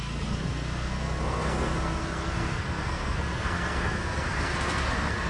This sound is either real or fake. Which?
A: fake